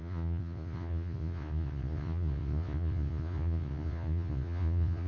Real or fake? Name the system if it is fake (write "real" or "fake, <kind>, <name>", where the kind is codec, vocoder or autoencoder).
fake, vocoder, Vocos